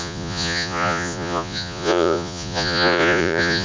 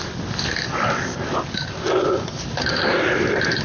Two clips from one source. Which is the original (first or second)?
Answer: second